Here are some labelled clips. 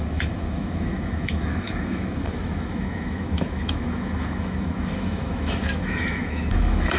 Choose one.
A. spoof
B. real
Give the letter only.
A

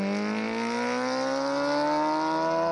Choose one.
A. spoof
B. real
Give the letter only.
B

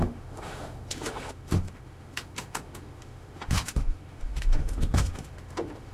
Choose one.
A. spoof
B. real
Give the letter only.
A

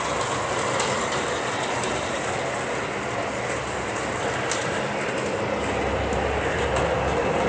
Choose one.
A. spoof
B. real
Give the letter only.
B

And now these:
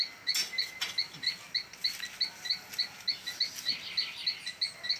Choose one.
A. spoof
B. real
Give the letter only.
B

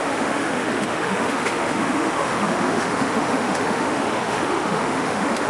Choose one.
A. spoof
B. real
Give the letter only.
A